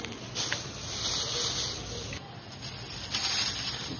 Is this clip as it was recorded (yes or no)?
yes